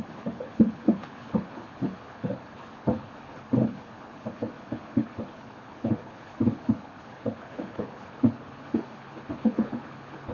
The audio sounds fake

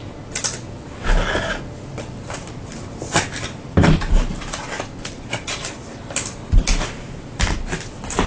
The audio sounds real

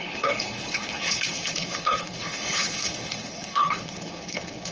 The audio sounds fake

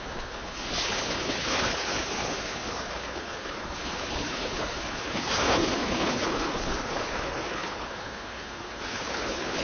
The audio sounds fake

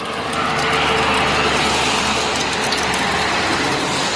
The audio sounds real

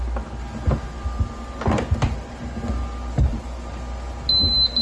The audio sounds real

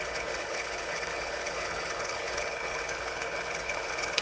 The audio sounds fake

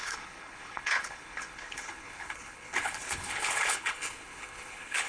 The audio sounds fake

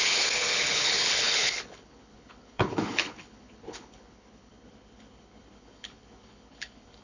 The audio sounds fake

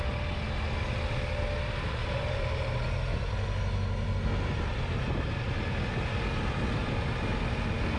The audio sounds real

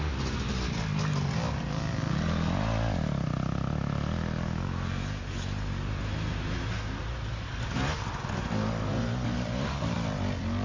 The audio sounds real